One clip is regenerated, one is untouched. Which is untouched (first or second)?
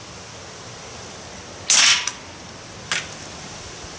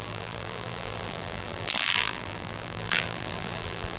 first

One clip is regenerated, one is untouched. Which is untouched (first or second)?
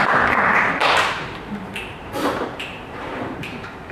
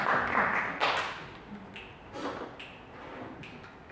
second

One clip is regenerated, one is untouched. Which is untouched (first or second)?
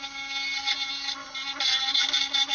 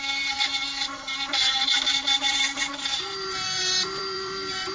first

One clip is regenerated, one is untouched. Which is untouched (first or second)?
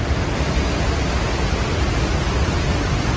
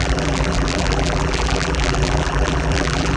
first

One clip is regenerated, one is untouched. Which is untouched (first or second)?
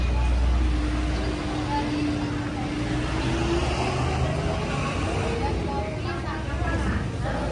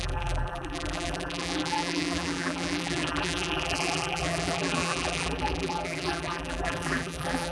first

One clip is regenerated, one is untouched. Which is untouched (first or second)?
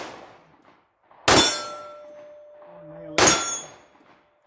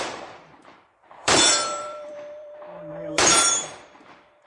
first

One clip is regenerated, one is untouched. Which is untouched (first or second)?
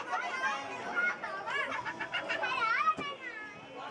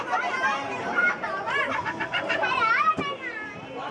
first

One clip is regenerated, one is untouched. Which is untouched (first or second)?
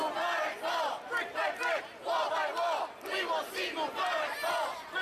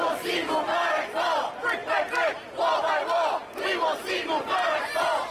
first